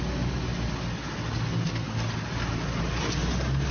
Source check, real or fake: real